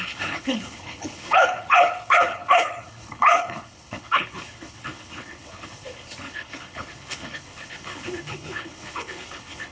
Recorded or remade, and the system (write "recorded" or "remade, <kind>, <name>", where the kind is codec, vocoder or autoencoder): remade, codec, HILCodec